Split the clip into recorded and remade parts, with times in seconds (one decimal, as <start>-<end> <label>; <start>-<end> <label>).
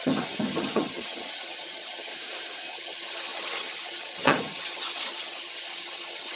0.0-2.1 remade; 2.1-2.7 recorded; 2.7-6.4 remade